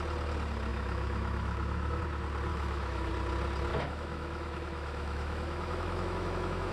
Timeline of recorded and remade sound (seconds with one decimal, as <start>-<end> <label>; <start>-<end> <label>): 0.0-0.7 recorded; 0.7-2.0 remade; 2.0-2.5 recorded; 2.5-3.1 remade; 3.1-3.7 recorded; 3.7-6.7 remade